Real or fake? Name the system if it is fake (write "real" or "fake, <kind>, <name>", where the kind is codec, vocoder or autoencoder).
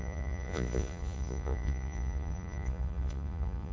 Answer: fake, vocoder, Vocos